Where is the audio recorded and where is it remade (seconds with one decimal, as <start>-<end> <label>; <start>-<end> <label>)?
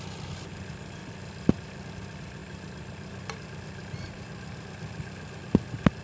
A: 0.0-6.0 recorded